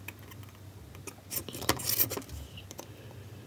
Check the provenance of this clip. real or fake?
real